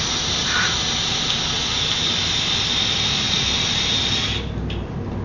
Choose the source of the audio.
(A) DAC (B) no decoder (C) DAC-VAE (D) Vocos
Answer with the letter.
B